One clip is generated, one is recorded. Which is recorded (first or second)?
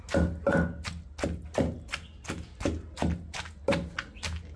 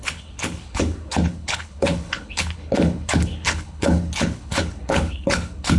first